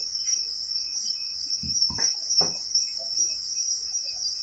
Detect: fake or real fake